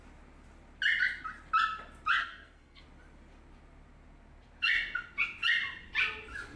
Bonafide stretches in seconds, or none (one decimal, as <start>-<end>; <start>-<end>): 0.0-2.2; 2.8-6.6